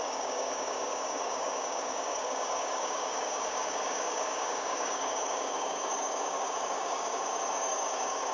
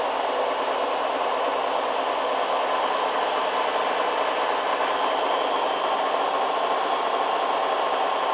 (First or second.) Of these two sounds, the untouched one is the second